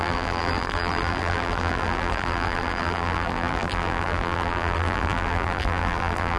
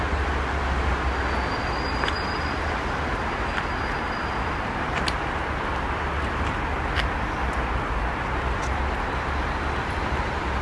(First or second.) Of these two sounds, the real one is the second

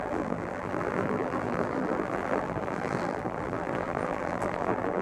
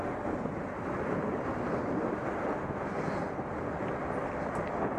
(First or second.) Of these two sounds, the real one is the second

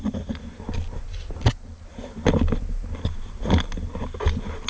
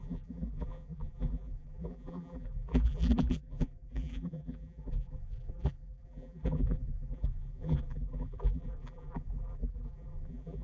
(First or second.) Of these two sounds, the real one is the first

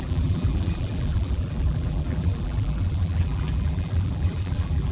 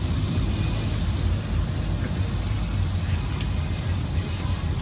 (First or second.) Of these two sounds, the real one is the second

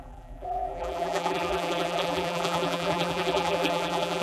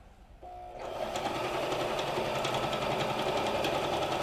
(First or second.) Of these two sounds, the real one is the second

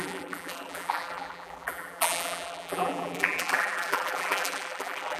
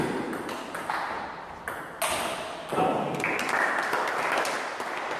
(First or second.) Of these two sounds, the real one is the second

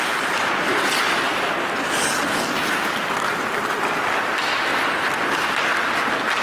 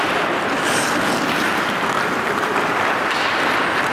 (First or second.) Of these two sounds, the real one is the first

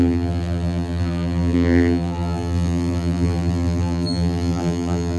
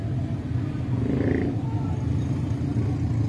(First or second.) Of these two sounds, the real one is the second